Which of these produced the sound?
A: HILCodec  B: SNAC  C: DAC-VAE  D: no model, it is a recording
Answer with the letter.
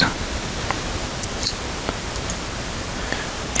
D